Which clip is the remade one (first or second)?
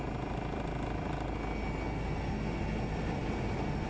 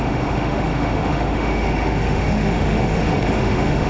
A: second